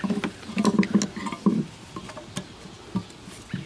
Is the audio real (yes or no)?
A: yes